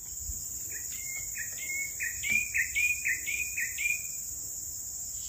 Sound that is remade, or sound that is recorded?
remade